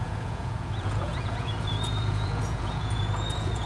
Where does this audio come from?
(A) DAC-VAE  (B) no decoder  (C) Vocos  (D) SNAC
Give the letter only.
C